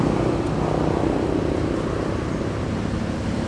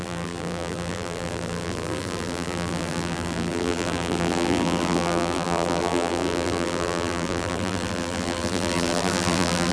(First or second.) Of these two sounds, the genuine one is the first